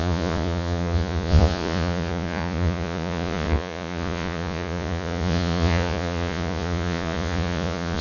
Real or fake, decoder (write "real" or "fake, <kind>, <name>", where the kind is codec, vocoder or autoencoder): fake, vocoder, Vocos